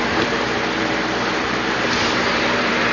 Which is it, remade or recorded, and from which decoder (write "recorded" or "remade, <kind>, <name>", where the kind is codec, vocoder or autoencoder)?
remade, vocoder, BigVGAN v2